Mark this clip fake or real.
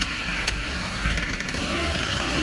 fake